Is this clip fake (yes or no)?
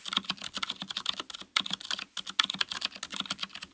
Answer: no